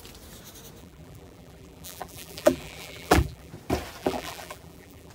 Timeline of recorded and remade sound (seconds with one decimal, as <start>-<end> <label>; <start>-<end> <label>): 0.0-0.8 recorded; 0.8-3.5 remade; 3.5-4.0 recorded; 4.0-5.1 remade